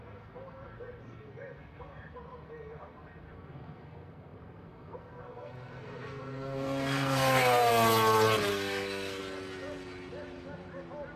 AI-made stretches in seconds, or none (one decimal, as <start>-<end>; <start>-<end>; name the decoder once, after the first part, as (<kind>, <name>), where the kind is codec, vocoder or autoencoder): 0.0-7.7 (codec, SNAC); 8.5-9.2